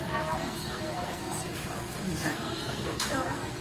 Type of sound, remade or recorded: remade